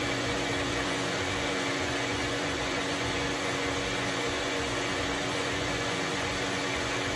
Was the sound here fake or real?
fake